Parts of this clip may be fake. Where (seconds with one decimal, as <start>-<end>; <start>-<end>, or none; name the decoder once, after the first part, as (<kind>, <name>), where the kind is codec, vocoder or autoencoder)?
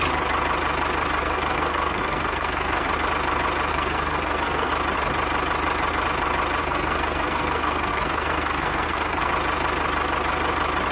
1.2-2.9 (codec, SNAC); 3.7-4.7; 6.6-9.3